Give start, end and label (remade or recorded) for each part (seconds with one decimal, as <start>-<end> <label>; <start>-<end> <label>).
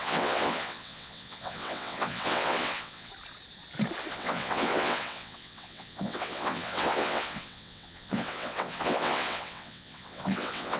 0.0-3.1 remade; 3.1-4.1 recorded; 4.1-10.8 remade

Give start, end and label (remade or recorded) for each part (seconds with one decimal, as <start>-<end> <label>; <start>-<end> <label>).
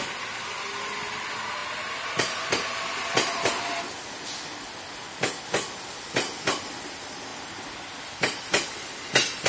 0.0-9.5 recorded